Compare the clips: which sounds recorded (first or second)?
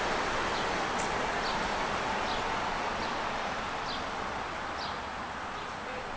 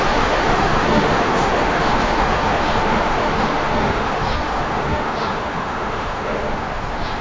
first